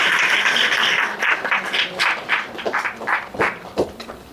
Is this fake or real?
real